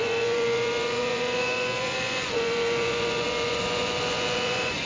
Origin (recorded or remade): remade